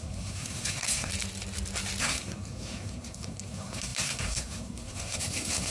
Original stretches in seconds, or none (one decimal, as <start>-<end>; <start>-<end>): 1.1-2.0